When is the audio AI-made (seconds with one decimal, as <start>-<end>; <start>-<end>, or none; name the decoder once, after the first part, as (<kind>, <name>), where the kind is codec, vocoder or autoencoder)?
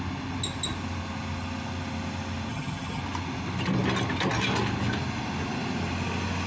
2.5-3.0 (vocoder, HiFi-GAN)